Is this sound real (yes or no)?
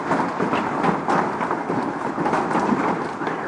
yes